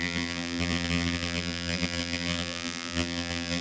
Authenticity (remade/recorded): remade